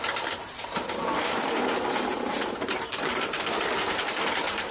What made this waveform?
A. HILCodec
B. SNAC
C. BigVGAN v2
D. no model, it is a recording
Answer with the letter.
C